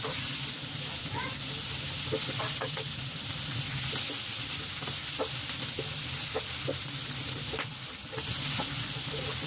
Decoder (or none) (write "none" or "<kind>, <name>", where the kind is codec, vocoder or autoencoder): none